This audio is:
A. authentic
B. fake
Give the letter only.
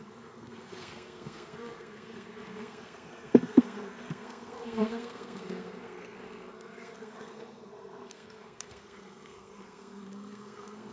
B